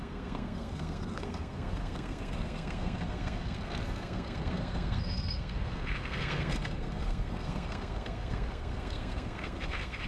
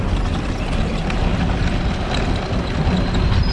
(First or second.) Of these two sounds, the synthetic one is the first